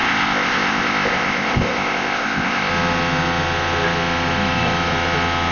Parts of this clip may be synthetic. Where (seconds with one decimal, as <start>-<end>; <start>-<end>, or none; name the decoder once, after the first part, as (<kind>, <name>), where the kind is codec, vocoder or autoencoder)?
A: 0.0-2.7 (codec, ZipCodec)